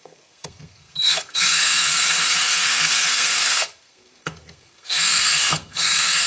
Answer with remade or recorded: remade